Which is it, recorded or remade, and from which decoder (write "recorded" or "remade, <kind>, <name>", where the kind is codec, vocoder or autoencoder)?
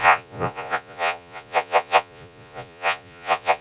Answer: remade, vocoder, Vocos